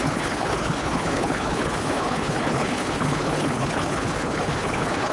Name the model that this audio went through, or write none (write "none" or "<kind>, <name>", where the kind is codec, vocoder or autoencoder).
codec, HILCodec